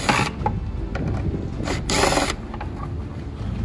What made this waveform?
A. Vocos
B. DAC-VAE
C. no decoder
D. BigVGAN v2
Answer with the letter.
C